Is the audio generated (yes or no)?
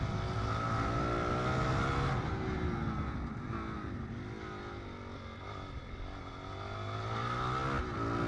no